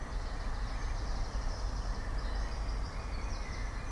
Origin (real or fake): real